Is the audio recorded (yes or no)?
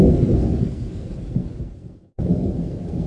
no